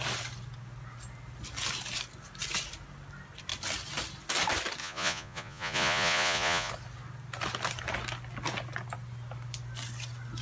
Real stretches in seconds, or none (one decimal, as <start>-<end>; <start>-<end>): 0.0-4.8; 6.7-10.4